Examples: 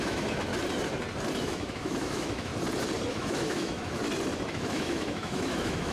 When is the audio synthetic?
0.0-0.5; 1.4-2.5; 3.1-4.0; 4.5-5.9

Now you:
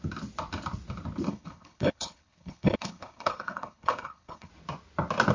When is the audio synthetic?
1.3-4.5